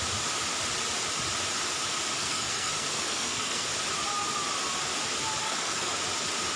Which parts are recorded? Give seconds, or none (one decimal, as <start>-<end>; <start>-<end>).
0.0-2.1; 3.7-5.4; 6.0-6.6